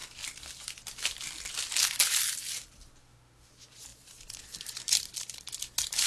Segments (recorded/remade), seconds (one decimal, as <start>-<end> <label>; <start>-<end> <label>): 0.0-3.0 recorded; 3.0-3.5 remade; 3.5-6.1 recorded